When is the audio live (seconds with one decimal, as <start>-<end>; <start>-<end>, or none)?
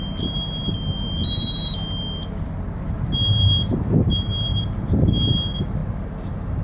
0.0-6.6